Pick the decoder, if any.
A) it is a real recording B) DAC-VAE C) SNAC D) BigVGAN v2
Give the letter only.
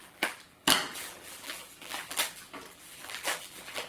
D